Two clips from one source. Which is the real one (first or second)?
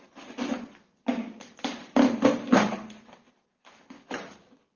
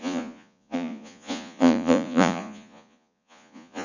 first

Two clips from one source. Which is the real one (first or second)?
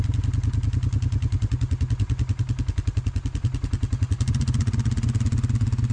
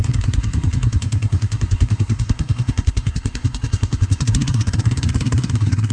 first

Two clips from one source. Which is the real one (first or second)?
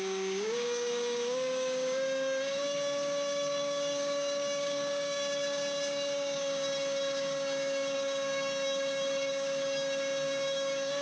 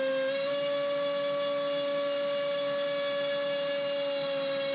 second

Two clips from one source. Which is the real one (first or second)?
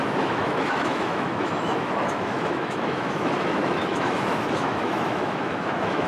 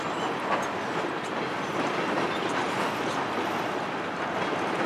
second